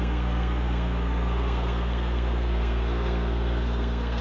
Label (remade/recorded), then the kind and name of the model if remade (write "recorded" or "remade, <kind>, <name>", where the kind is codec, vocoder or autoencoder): remade, codec, SNAC